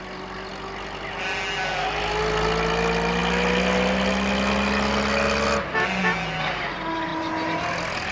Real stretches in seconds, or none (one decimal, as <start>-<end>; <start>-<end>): 0.0-8.1